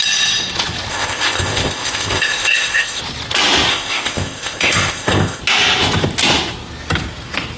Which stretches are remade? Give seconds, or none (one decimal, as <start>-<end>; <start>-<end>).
0.9-3.0; 3.7-5.4